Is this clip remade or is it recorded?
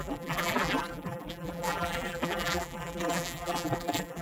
remade